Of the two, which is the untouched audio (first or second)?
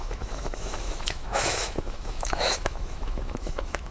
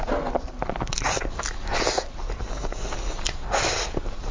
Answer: second